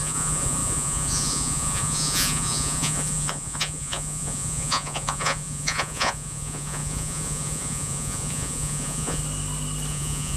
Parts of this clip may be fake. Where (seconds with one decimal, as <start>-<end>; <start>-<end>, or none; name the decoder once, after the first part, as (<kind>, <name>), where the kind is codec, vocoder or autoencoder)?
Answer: 0.0-9.2 (vocoder, Vocos); 9.9-10.4